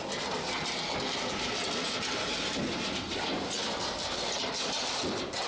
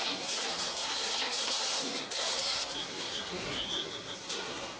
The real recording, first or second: first